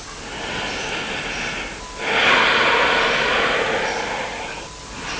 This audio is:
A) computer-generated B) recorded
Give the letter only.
B